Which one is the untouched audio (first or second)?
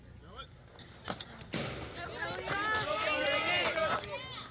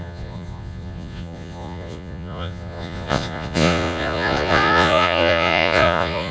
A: first